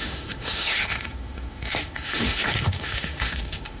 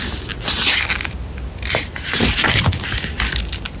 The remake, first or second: first